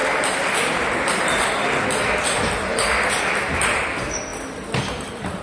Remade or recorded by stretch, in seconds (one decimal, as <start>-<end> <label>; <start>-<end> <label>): 0.0-5.4 recorded